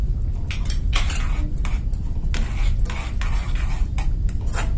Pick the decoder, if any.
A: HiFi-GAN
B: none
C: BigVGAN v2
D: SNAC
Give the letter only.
B